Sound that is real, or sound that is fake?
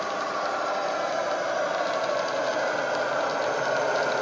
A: real